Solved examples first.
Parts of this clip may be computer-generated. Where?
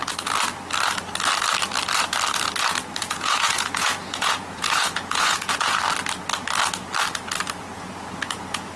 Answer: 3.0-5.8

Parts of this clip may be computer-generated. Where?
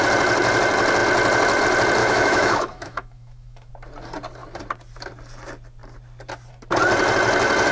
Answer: 2.0-3.7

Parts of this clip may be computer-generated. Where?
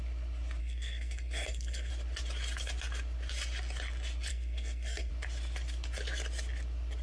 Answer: 0.6-1.9; 4.3-5.1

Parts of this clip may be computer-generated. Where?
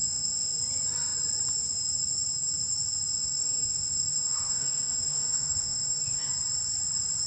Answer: 0.0-0.6; 3.1-6.3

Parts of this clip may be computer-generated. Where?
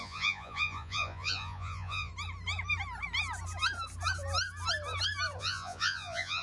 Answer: 0.0-2.1; 5.4-6.4